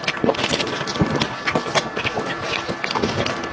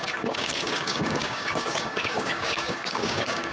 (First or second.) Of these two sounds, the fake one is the second